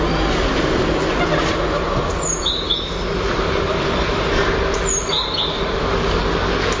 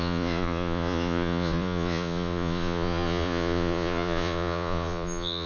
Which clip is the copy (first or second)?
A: second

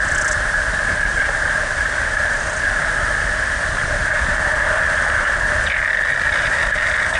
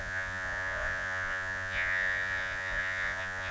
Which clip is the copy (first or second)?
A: second